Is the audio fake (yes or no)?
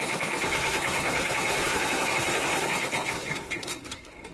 yes